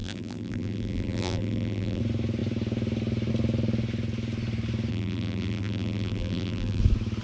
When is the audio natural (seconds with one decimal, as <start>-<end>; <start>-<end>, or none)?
2.0-4.9; 6.8-7.2